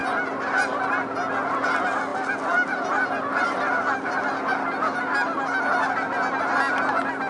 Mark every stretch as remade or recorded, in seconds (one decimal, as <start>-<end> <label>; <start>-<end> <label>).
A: 0.0-7.3 recorded